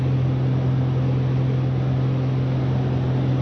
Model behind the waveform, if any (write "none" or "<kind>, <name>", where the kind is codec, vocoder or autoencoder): none